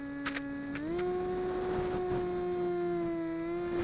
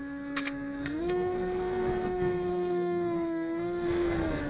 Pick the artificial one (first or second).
second